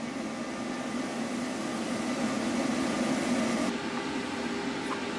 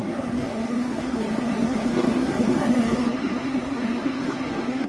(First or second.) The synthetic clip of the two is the second